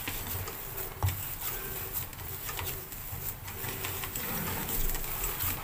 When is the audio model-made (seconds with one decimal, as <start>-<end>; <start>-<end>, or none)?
none